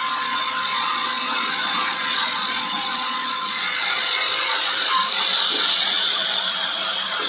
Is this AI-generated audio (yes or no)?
yes